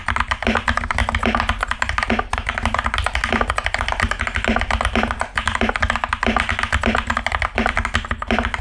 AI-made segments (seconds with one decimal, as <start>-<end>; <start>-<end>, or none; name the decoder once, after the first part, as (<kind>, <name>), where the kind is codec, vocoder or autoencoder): none